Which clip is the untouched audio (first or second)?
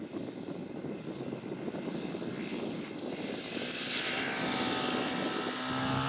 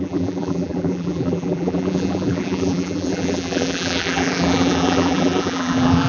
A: first